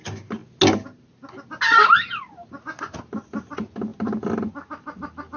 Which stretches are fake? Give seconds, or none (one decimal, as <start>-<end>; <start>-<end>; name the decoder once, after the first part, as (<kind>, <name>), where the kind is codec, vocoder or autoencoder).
none

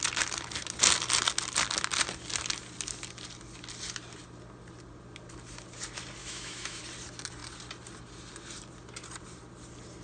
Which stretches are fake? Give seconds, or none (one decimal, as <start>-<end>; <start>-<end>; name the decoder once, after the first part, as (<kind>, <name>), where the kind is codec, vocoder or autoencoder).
6.2-6.8 (autoencoder, DAC-VAE)

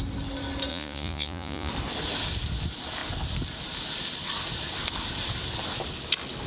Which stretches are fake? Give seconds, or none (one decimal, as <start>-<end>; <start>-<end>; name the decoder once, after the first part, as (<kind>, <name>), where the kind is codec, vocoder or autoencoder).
0.7-1.7 (vocoder, Vocos)

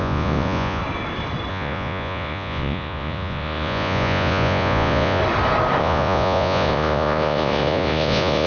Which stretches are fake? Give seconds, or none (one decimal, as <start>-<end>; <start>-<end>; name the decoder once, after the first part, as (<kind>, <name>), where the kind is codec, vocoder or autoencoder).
0.0-0.8 (vocoder, Vocos); 1.5-5.2; 5.8-8.5

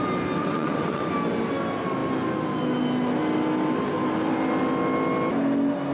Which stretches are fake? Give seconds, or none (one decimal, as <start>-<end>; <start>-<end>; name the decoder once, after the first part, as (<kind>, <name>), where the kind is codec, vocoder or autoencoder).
0.4-1.0 (vocoder, WaveNeXt)

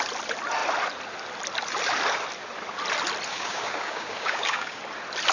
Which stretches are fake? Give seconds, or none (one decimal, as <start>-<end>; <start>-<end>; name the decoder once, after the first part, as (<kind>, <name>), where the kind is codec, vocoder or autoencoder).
3.3-4.8 (codec, DAC)